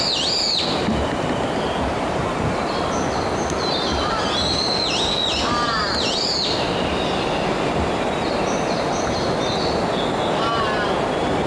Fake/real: real